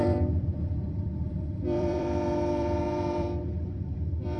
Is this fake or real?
fake